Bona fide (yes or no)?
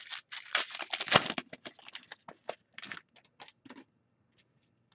yes